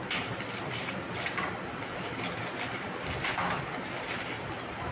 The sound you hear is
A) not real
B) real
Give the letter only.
B